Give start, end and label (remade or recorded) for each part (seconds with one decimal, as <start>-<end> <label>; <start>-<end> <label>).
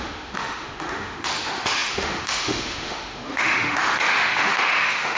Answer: 0.0-5.2 remade